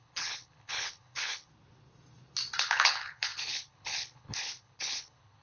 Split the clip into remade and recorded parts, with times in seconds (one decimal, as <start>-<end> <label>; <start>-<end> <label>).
0.0-1.5 remade; 1.5-2.6 recorded; 2.6-5.4 remade